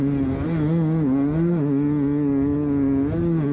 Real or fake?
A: real